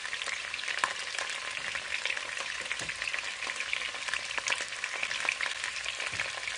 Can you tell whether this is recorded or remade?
recorded